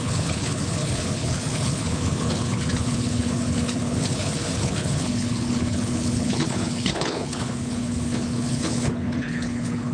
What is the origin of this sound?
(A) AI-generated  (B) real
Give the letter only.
A